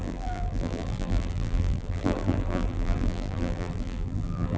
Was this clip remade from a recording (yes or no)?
yes